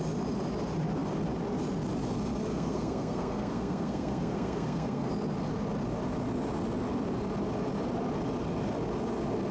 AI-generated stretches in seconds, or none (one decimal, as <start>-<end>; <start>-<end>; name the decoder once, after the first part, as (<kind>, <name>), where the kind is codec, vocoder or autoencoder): 2.5-5.1 (codec, SNAC)